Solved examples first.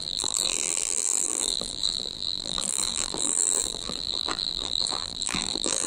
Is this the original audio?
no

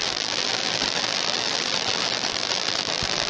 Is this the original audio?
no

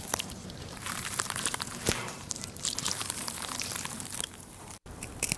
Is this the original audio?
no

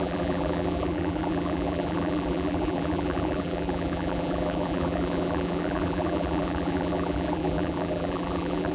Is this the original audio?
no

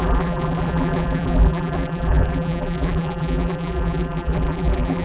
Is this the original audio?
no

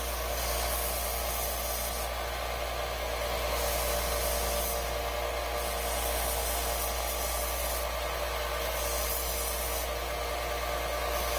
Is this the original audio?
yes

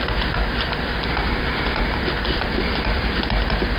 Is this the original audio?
no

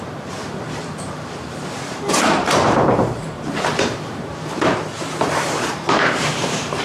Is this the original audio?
no